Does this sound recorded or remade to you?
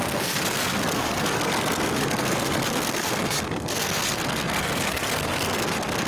remade